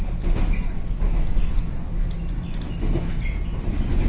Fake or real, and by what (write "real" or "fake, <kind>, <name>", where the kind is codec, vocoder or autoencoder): real